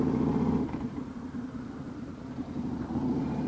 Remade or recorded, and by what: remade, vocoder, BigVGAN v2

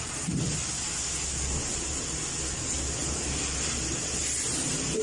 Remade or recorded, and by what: recorded